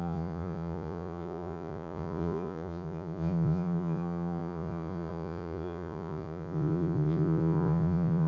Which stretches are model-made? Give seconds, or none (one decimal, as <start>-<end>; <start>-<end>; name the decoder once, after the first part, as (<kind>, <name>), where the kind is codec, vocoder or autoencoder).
0.0-8.3 (vocoder, Vocos)